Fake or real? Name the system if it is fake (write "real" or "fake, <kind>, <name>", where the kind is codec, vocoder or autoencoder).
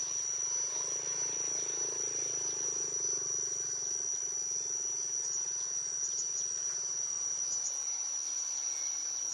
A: real